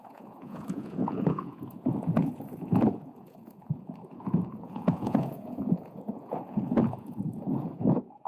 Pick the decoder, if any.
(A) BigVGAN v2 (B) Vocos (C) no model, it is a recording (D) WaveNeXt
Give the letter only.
B